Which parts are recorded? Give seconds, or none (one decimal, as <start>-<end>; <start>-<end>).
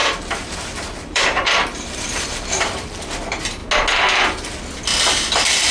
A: 3.6-5.0